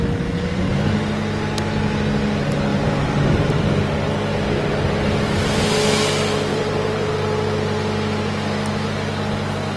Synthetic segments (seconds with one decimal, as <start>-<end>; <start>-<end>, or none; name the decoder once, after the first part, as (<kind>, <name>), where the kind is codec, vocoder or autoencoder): 2.7-5.7 (vocoder, BigVGAN v2); 6.5-7.1